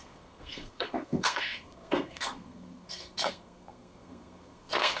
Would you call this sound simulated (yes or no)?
yes